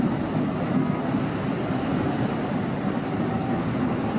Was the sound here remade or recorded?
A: recorded